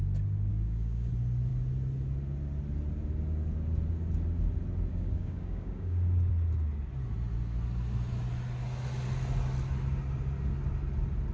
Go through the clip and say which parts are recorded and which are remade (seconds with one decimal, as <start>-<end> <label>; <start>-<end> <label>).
0.0-0.5 recorded; 0.5-1.1 remade; 1.1-4.9 recorded; 4.9-6.3 remade; 6.3-11.3 recorded